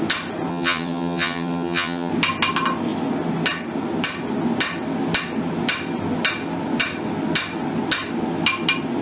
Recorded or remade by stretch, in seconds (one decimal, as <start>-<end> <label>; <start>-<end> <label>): 0.0-0.5 recorded; 0.5-2.1 remade; 2.1-9.0 recorded